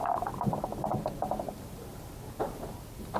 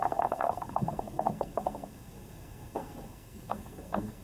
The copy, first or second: second